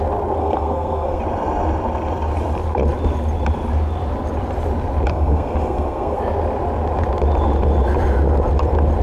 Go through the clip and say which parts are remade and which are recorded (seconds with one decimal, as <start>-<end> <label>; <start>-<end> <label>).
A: 0.0-0.4 recorded; 0.4-1.2 remade; 1.2-5.1 recorded; 5.1-6.2 remade; 6.2-9.0 recorded